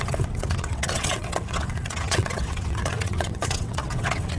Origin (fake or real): fake